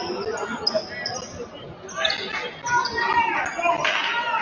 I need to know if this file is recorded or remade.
recorded